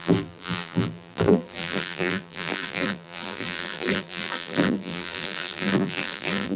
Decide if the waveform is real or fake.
fake